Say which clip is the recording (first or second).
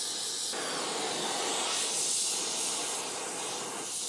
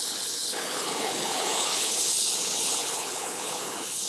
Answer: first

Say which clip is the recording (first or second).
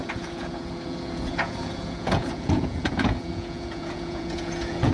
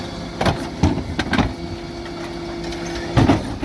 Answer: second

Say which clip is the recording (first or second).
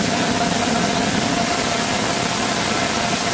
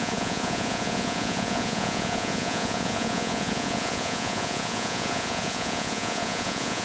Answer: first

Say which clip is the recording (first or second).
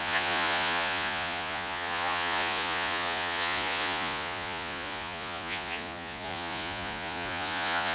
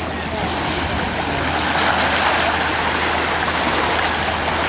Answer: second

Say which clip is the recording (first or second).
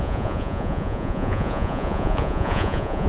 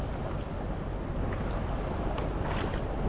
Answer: second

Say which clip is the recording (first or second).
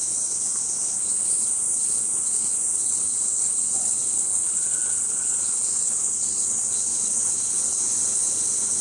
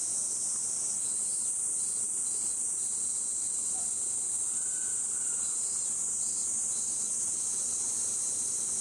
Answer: second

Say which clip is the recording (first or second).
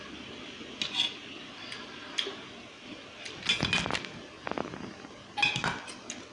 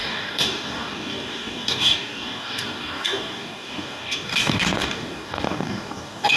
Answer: first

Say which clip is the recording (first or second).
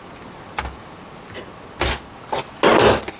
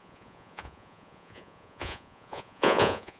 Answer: first